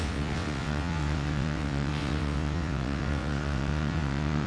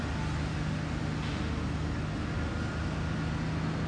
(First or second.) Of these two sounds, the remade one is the first